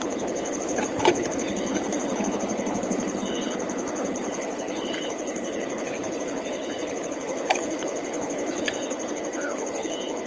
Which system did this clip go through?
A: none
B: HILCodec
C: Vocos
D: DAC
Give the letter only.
B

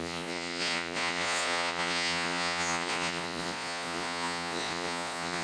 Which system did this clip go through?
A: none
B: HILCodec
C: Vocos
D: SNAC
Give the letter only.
C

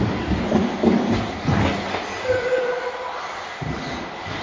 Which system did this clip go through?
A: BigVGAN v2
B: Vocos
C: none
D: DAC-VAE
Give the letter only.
C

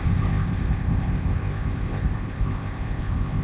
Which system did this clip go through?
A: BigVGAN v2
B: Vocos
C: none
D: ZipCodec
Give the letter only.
D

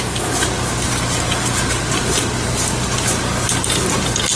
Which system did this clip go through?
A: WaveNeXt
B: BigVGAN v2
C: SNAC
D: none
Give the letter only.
D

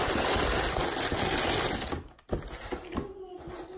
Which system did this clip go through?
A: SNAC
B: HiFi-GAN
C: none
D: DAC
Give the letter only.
C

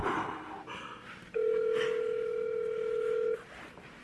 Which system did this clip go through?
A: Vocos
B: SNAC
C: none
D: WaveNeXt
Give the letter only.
C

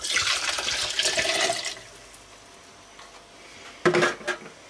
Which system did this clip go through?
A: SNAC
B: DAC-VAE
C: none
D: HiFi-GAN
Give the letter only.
C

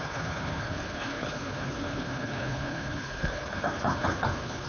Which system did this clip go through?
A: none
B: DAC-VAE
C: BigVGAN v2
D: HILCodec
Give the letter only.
D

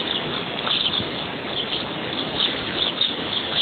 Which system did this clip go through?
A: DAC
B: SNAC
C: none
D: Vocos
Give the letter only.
A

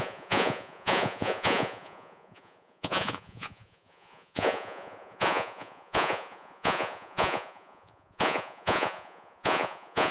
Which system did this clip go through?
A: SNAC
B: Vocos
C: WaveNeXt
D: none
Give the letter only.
B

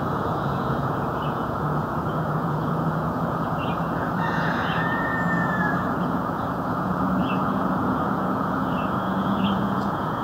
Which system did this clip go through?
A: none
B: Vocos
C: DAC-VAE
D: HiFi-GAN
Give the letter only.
B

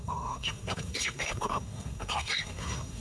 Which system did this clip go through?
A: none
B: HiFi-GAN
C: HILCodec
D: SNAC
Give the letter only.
D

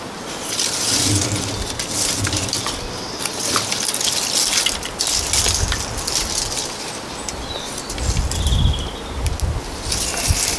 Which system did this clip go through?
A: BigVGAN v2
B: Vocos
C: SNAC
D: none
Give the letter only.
D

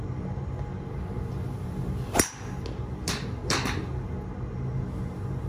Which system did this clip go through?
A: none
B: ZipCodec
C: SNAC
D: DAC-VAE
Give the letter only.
A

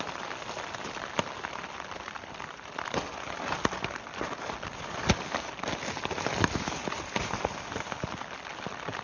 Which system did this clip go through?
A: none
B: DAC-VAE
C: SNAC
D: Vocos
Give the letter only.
A